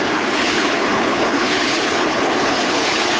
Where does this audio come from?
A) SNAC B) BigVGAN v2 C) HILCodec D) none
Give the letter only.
C